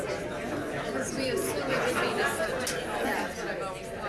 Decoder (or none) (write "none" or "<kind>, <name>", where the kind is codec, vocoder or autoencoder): none